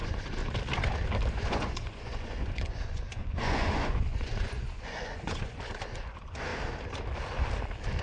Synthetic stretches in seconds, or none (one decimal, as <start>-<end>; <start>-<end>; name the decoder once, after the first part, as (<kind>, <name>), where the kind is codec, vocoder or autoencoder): 0.0-0.4 (vocoder, Vocos); 1.3-6.5